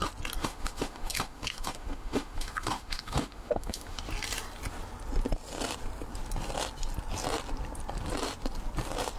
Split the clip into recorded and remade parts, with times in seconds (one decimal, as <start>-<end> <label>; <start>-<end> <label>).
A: 0.0-0.4 recorded; 0.4-4.0 remade; 4.0-9.2 recorded